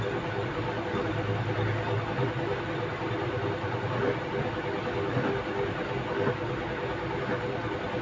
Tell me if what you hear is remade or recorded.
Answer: recorded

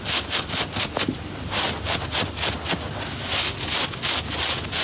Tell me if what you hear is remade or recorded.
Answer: recorded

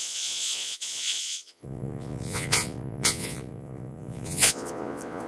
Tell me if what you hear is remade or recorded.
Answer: remade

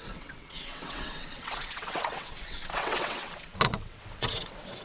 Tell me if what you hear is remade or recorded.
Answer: remade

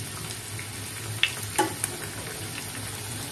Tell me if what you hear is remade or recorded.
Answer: recorded